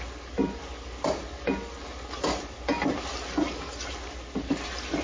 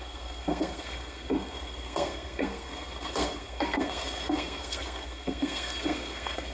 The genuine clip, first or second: first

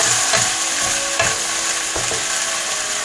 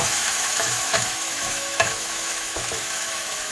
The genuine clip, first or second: first